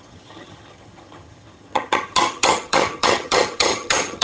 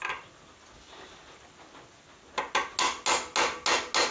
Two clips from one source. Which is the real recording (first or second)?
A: second